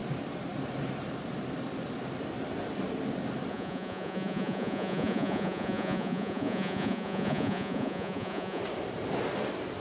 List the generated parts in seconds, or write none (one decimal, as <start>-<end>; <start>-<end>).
3.5-8.6